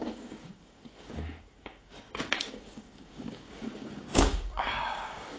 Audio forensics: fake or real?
fake